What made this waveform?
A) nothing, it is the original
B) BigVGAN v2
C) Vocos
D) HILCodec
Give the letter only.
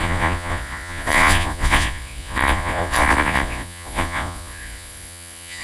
C